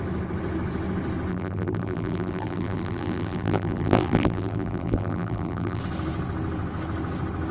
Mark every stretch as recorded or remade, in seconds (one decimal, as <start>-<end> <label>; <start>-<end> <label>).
0.0-1.3 recorded; 1.3-5.8 remade; 5.8-7.5 recorded

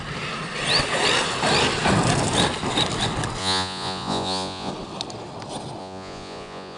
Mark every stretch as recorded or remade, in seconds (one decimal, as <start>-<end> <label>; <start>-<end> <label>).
0.0-3.4 recorded; 3.4-4.7 remade; 4.7-5.8 recorded; 5.8-6.8 remade

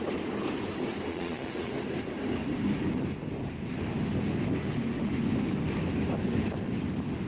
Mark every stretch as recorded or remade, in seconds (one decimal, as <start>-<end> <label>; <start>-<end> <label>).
0.0-1.1 recorded; 1.1-1.7 remade; 1.7-7.3 recorded

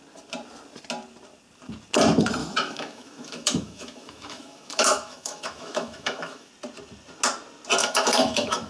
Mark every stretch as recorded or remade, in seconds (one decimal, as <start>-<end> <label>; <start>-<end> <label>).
0.0-2.4 recorded; 2.4-6.5 remade; 6.5-7.8 recorded; 7.8-8.7 remade